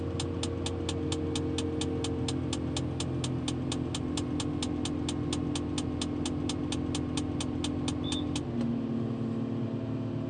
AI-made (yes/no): no